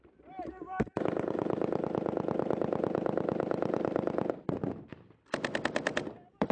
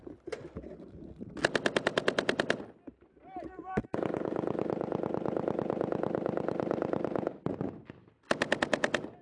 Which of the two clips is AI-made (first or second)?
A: first